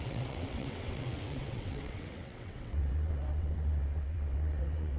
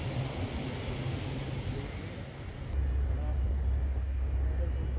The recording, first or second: second